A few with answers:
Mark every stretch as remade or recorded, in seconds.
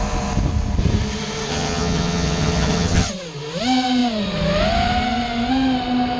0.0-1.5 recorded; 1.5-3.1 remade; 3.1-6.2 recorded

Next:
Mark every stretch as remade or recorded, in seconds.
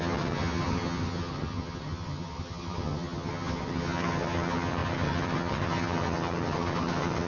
0.0-7.3 remade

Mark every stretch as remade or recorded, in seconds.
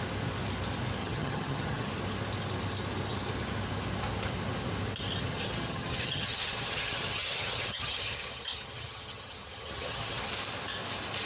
0.0-1.0 recorded; 1.0-1.9 remade; 1.9-5.3 recorded; 5.3-10.3 remade; 10.3-11.3 recorded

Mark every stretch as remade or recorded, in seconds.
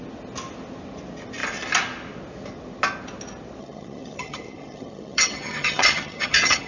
0.0-3.6 recorded; 3.6-6.7 remade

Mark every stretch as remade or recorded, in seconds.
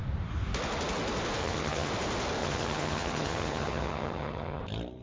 0.0-1.4 recorded; 1.4-1.9 remade; 1.9-2.4 recorded; 2.4-4.6 remade; 4.6-5.0 recorded